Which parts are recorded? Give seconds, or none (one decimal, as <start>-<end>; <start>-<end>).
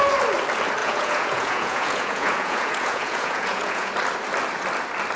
0.0-0.8; 3.9-5.2